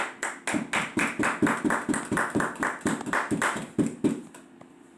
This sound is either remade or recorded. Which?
recorded